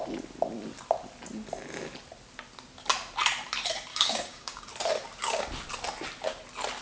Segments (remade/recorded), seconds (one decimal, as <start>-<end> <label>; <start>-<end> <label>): 0.0-3.9 recorded; 3.9-4.6 remade; 4.6-6.8 recorded